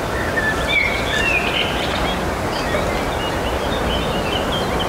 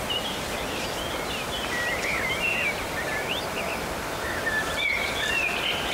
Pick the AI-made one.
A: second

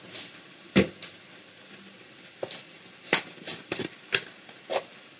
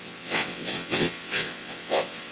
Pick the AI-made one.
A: second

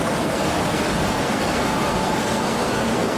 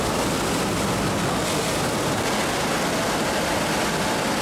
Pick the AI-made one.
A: first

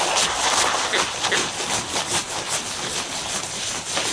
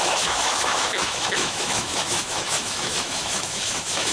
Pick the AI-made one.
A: second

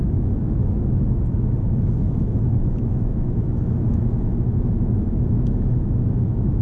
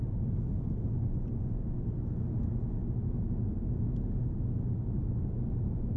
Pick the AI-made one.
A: first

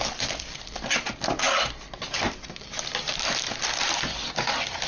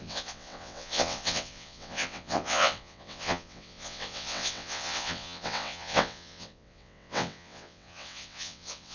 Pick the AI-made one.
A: second